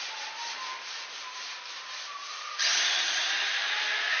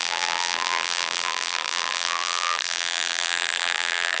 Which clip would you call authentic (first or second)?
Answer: first